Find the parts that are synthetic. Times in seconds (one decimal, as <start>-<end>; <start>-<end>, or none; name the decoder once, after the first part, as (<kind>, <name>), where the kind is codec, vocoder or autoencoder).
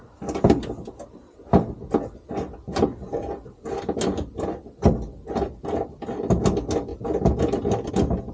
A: none